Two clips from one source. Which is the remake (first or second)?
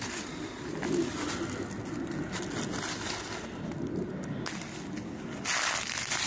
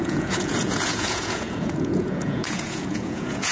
second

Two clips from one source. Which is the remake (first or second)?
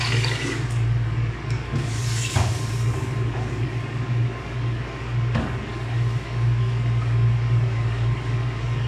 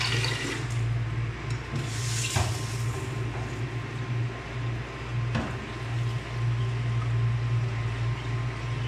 first